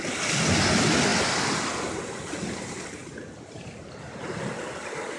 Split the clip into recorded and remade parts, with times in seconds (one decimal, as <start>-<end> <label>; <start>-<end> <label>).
0.0-5.2 recorded